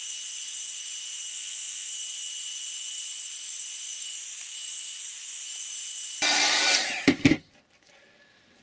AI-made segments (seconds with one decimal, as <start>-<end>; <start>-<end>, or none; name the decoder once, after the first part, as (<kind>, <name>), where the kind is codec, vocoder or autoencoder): 1.3-1.9 (vocoder, Vocos)